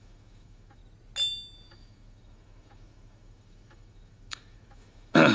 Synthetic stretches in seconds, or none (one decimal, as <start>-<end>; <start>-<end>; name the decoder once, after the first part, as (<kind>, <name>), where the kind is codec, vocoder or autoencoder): 0.0-0.8 (autoencoder, DAC-VAE); 1.7-5.3